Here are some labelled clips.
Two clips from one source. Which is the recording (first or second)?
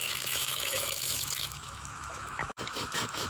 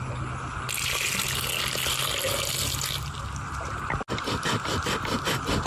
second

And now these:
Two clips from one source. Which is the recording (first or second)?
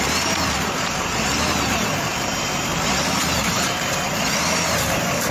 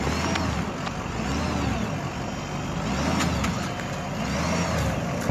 second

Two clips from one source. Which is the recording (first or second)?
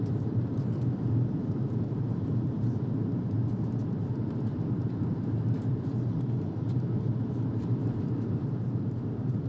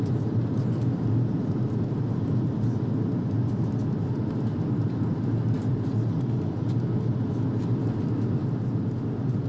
second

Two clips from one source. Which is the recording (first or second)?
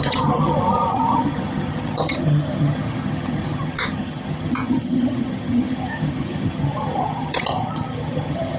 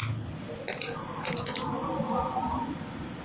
second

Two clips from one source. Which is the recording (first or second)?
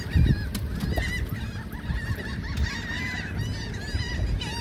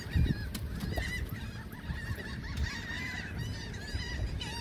first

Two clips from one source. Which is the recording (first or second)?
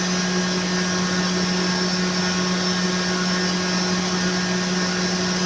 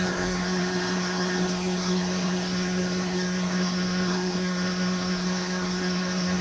first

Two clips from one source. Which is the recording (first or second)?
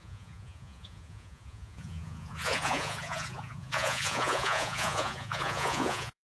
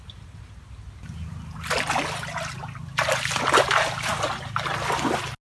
second